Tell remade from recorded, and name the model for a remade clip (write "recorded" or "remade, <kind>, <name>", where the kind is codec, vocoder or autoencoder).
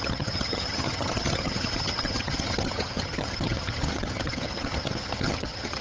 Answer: remade, vocoder, HiFi-GAN